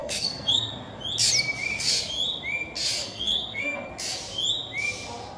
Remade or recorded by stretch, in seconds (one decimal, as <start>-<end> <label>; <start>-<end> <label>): 0.0-0.7 remade; 0.7-3.0 recorded; 3.0-3.9 remade; 3.9-5.4 recorded